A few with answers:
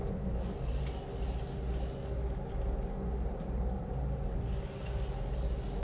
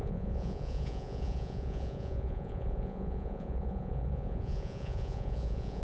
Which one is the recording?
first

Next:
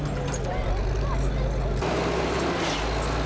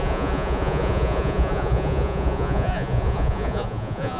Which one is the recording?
first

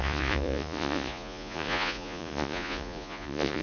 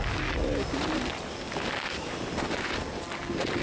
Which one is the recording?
second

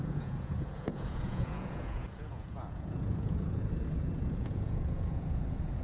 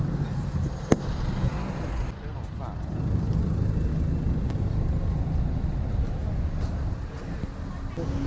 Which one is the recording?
second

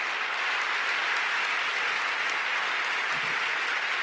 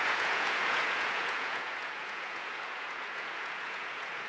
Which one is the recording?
first